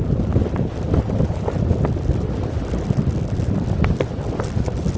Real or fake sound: real